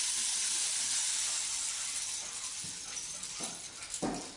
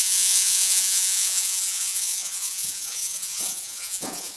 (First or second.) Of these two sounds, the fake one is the second